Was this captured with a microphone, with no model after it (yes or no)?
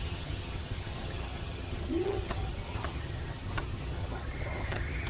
no